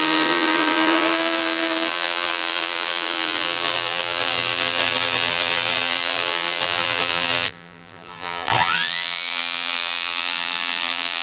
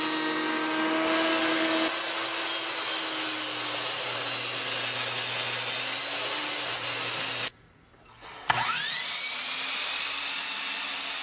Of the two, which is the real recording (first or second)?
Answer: second